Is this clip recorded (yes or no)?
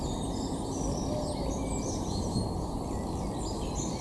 yes